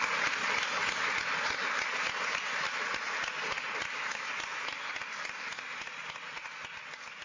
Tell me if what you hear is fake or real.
real